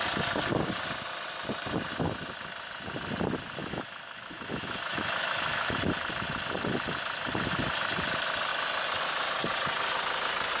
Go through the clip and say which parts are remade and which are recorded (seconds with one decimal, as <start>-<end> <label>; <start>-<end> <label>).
0.0-3.6 recorded; 3.6-5.7 remade; 5.7-10.6 recorded